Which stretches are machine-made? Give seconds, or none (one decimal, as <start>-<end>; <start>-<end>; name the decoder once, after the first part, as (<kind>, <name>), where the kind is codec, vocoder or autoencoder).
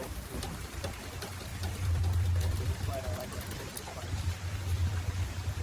0.0-5.6 (vocoder, BigVGAN v2)